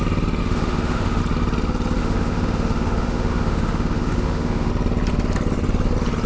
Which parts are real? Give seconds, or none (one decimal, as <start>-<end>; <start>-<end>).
0.0-0.4; 1.2-2.0; 4.7-6.3